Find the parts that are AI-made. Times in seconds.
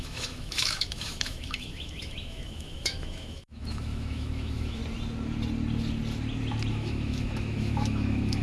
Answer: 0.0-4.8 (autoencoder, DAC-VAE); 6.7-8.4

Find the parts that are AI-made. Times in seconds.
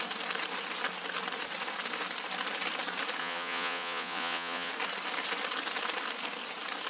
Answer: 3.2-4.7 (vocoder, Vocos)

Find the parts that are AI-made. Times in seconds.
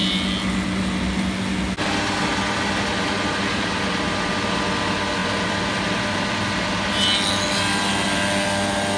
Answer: none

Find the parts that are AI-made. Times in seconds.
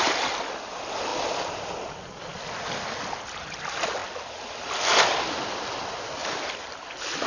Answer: none